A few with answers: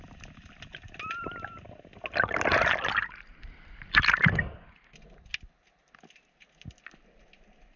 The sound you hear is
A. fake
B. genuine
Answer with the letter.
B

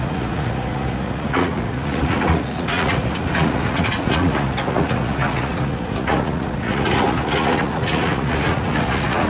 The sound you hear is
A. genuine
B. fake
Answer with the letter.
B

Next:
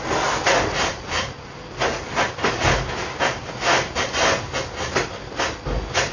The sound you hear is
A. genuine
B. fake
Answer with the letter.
A